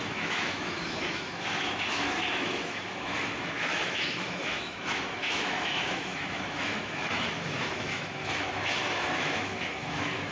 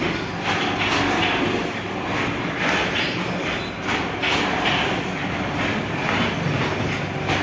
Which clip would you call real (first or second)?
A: second